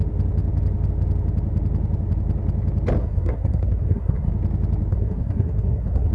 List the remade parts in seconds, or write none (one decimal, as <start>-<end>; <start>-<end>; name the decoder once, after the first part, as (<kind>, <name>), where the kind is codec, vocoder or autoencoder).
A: 3.0-4.3 (codec, SNAC); 4.9-6.1